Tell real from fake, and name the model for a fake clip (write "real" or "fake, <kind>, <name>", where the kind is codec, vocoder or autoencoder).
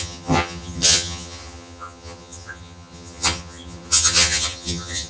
fake, vocoder, HiFi-GAN